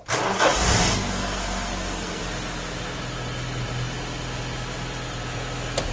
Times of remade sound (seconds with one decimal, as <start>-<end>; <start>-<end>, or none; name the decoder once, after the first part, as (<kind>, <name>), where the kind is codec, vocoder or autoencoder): 0.9-2.2 (codec, SNAC)